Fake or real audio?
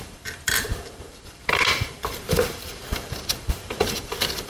fake